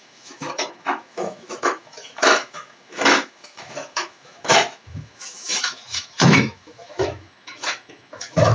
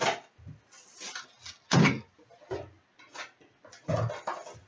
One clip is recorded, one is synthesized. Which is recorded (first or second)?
second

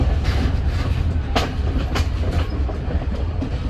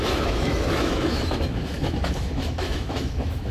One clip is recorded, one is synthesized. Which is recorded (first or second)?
first